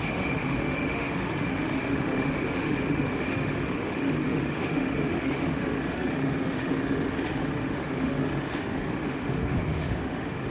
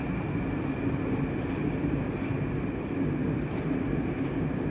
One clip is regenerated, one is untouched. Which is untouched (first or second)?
second